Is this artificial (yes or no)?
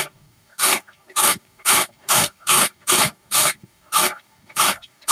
yes